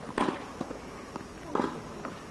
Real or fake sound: real